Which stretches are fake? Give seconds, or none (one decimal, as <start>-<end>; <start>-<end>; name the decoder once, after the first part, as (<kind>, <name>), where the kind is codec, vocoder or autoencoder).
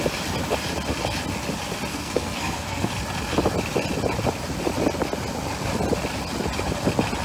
1.9-2.9 (codec, SNAC)